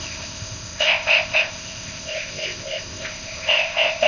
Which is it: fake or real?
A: fake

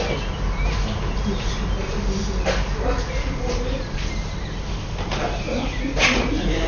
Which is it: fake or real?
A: real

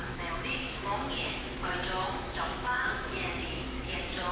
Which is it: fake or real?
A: fake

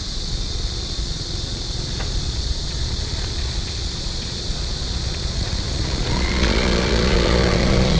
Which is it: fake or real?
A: fake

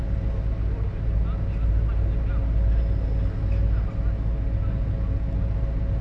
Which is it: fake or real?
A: real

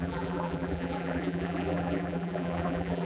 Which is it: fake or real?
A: fake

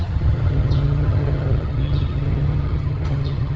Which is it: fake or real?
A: fake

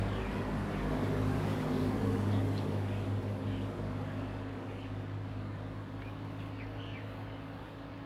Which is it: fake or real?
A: fake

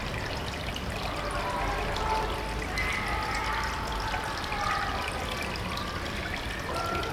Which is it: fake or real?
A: real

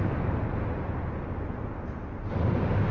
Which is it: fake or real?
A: real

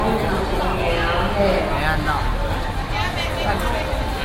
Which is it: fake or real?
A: real